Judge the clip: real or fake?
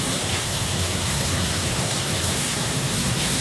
fake